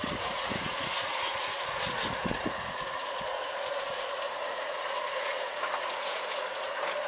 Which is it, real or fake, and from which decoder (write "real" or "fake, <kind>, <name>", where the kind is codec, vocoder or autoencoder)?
fake, vocoder, Vocos